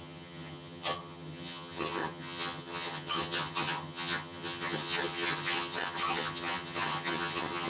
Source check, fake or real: fake